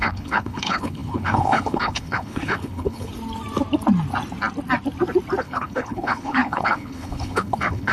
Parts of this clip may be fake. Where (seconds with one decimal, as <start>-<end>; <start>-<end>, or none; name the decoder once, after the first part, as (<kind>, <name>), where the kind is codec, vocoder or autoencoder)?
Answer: 0.0-3.1 (codec, HILCodec); 5.4-7.9